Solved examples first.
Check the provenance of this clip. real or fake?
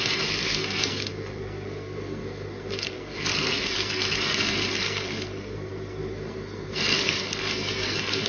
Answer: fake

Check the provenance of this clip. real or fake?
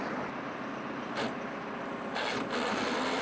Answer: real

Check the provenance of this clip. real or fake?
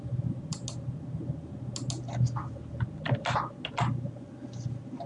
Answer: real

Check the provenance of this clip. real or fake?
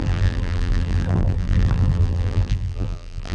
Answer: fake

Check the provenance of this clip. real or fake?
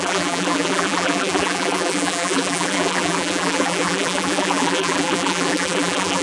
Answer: fake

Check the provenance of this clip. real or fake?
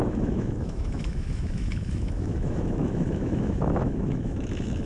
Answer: fake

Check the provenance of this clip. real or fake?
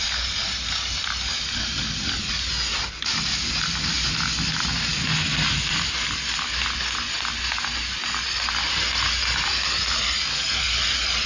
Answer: real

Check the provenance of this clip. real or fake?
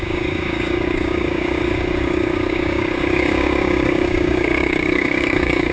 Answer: fake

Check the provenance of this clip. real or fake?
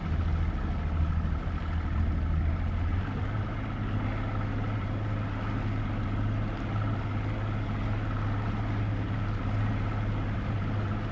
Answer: real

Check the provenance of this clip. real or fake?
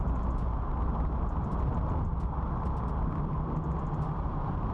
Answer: real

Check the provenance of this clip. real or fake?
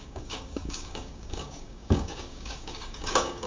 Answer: fake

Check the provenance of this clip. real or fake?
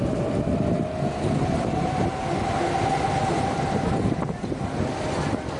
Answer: real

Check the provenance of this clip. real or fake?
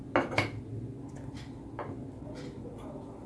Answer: real